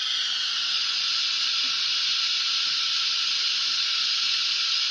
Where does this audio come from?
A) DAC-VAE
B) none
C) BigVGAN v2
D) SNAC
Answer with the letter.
B